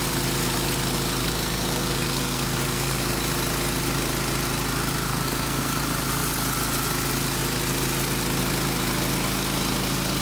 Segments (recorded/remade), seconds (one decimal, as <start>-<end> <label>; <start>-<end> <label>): 0.0-1.2 recorded; 1.2-3.2 remade; 3.2-5.1 recorded; 5.1-5.8 remade; 5.8-10.2 recorded